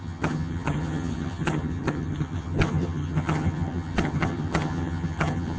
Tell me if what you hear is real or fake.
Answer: fake